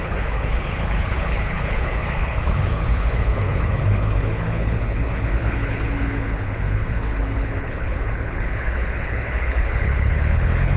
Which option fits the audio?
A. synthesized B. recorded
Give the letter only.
A